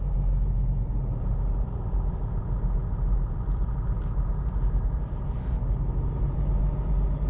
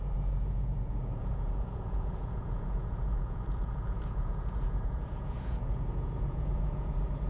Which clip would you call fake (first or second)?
second